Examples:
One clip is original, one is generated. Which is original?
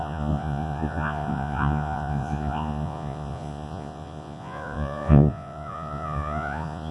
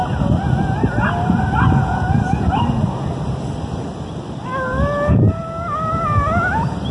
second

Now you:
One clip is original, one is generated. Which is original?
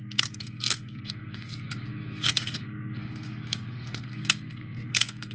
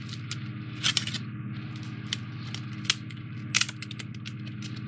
second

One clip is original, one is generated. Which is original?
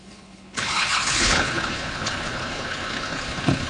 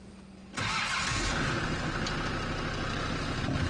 second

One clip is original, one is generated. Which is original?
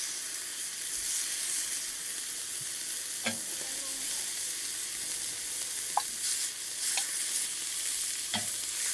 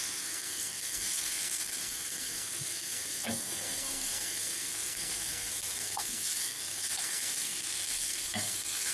first